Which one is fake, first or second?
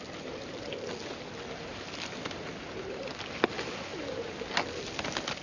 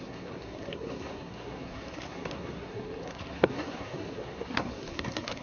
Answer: second